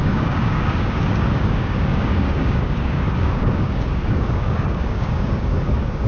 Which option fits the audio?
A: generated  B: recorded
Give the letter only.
A